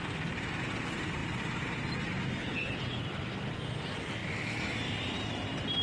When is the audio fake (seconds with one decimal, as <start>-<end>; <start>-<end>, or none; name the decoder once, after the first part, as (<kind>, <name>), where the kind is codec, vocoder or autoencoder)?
2.4-3.0 (codec, HILCodec)